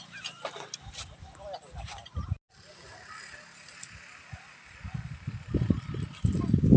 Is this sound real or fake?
real